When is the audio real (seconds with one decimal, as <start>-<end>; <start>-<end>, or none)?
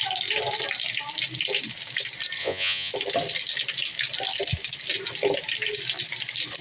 0.0-2.4; 2.9-6.6